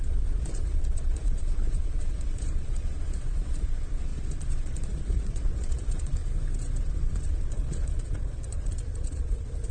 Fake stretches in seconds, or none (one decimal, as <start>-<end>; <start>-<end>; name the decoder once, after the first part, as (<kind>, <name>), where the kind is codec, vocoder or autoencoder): 0.0-6.2 (vocoder, Vocos); 6.8-9.7